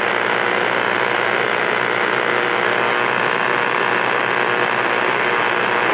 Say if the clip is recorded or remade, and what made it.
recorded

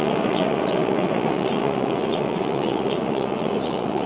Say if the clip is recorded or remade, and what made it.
remade, vocoder, Vocos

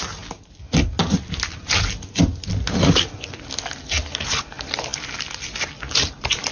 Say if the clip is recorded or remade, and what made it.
recorded